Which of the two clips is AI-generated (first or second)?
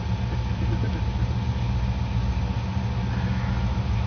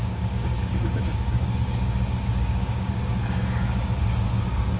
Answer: second